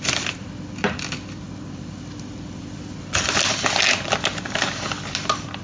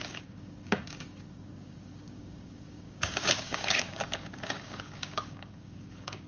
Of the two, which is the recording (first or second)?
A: first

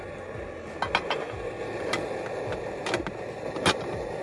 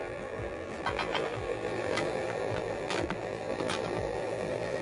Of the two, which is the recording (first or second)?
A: first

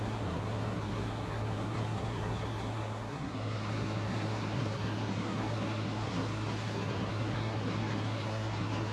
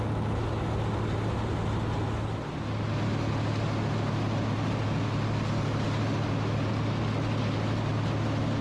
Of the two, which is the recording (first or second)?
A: second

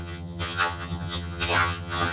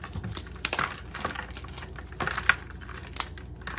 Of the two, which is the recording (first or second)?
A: second